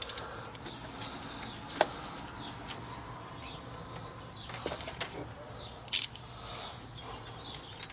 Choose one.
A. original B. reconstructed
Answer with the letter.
A